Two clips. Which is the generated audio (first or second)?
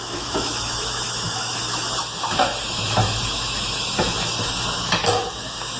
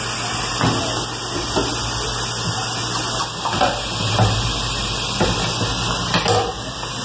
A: first